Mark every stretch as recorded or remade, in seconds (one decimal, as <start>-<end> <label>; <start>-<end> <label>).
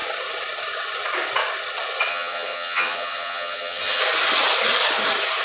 0.0-2.1 recorded; 2.1-4.0 remade; 4.0-5.4 recorded